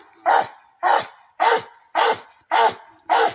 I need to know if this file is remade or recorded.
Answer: recorded